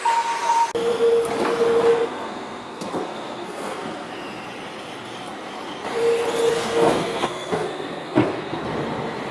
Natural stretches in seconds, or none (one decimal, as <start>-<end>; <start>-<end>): 0.0-1.9; 4.1-6.5; 8.6-9.3